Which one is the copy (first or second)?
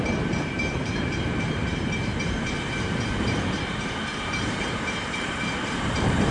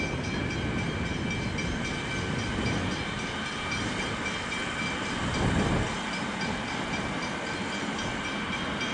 first